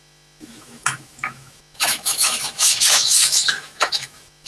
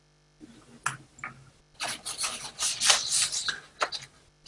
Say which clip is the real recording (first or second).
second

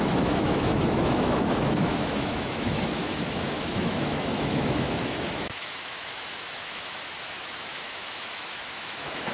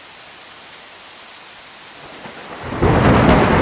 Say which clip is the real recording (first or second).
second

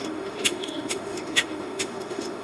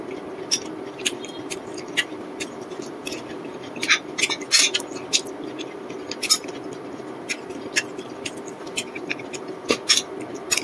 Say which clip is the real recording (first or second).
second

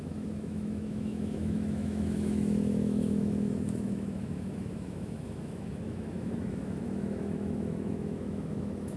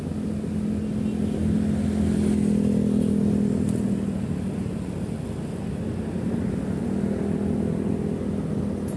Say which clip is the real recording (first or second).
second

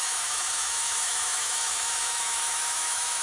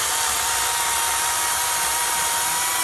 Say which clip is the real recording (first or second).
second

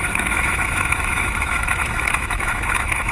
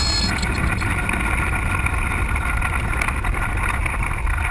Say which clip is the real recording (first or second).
second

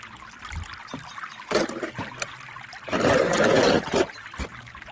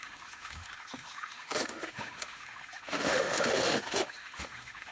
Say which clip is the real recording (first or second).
first